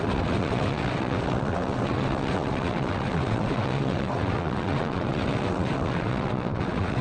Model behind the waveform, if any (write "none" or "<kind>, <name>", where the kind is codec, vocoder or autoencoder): vocoder, WaveNeXt